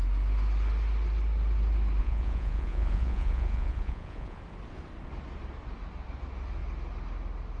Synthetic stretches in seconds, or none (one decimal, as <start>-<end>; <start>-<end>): 2.0-4.4